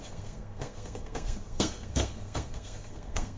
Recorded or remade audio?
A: remade